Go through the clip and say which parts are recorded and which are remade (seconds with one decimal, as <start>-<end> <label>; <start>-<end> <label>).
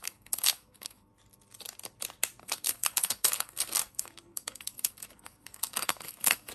0.0-1.1 remade; 1.1-2.4 recorded; 2.4-6.5 remade